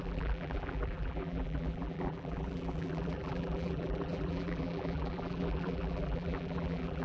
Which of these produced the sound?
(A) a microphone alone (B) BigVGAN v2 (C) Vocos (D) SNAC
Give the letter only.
B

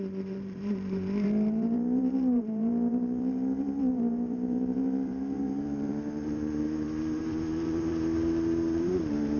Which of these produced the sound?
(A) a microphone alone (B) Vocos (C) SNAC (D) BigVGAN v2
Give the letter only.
D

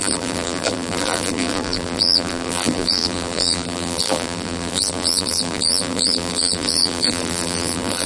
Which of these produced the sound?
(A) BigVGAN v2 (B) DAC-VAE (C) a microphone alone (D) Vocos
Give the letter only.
A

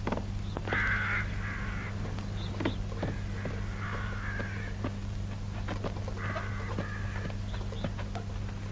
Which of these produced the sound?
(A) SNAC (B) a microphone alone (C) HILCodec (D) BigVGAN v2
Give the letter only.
B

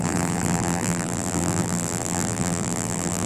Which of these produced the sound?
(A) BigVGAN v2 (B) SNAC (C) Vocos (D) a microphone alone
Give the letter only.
A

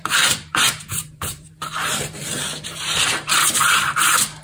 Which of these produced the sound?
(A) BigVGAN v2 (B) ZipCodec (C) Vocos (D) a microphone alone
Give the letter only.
A